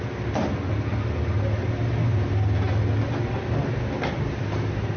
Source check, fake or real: real